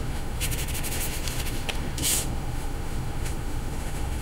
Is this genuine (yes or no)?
no